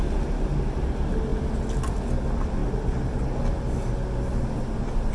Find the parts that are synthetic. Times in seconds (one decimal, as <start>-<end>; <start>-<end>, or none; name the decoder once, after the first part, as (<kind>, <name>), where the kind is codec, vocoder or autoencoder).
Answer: none